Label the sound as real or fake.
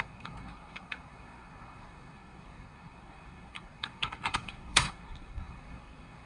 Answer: fake